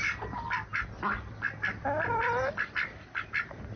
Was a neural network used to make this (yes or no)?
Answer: no